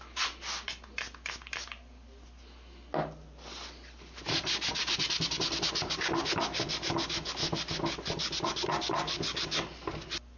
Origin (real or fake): real